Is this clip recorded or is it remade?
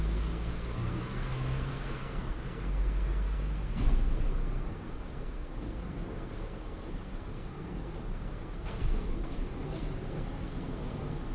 remade